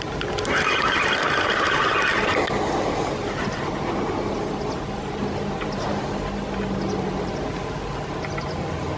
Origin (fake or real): real